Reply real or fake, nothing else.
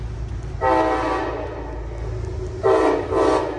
real